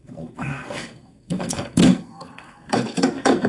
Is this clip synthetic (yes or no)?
yes